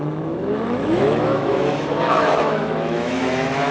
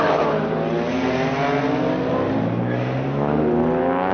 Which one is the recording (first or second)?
second